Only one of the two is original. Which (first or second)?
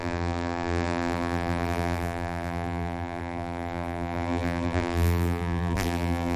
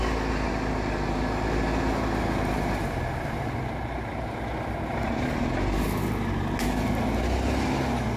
second